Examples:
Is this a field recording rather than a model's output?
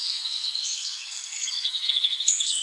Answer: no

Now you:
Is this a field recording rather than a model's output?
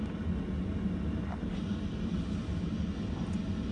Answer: yes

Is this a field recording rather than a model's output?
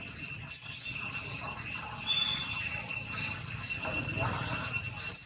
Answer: yes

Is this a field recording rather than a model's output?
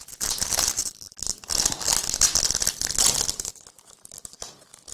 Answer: yes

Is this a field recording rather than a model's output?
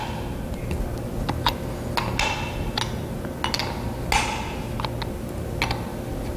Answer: yes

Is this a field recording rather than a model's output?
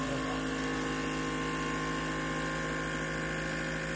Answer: yes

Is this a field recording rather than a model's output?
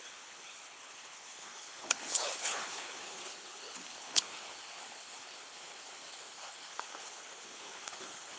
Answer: no